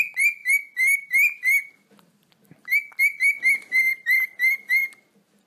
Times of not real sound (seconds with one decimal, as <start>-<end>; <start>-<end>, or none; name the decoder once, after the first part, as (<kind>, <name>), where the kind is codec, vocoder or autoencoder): none